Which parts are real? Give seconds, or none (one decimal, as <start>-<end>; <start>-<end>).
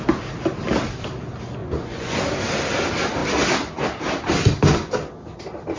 0.0-1.6; 2.2-5.8